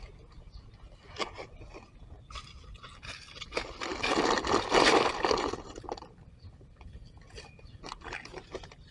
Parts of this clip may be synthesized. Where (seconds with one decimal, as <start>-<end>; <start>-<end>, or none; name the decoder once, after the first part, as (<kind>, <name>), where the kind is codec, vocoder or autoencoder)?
none